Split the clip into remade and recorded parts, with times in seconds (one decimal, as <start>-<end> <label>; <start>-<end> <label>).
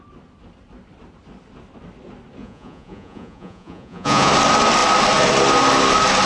0.0-2.4 recorded; 2.4-4.3 remade; 4.3-6.3 recorded